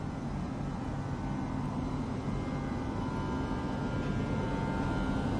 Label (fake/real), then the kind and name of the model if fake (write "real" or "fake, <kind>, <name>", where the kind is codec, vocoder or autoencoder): real